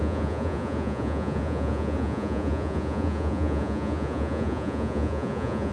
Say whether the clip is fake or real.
fake